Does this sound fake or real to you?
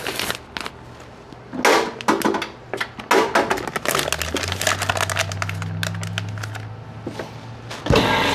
real